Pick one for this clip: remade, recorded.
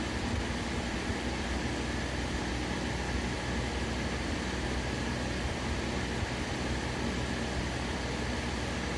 recorded